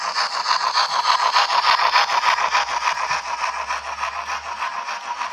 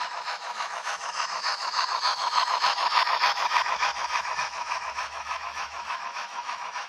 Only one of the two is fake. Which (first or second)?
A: second